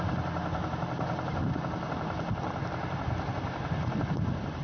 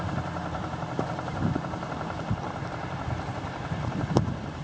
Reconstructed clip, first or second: second